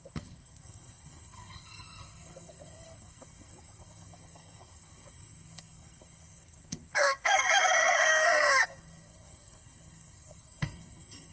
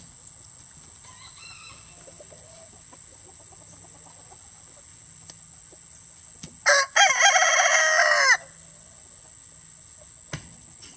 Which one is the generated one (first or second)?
first